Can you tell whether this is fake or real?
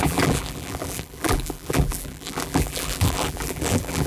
fake